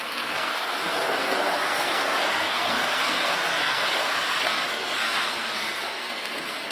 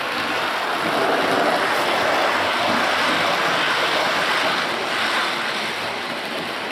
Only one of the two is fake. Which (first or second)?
first